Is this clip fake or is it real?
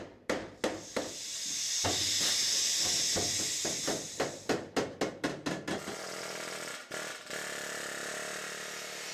real